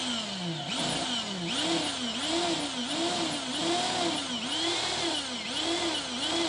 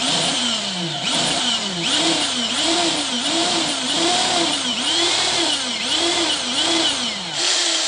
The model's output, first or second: second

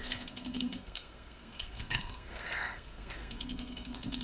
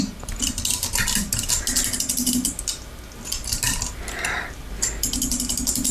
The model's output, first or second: first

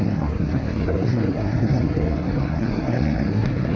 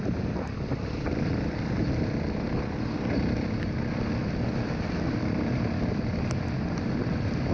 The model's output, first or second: first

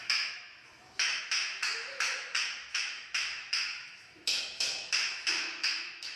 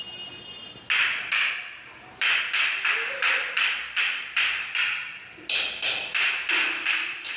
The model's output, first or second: first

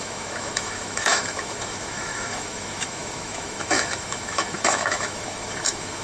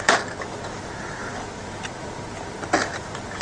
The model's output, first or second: first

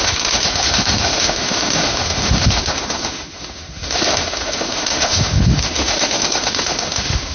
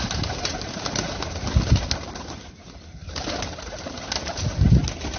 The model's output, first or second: first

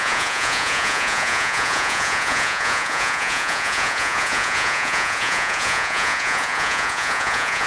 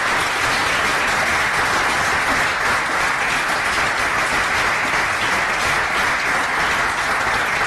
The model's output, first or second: first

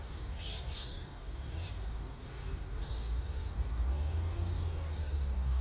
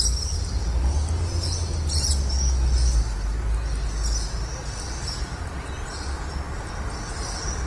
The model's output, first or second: first